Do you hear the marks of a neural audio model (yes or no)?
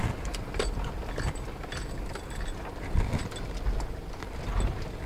no